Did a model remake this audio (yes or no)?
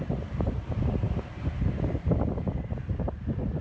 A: no